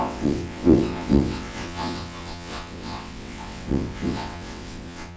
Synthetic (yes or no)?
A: yes